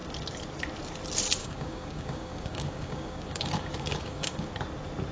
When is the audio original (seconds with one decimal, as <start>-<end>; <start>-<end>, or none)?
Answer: 0.0-1.4; 4.5-5.1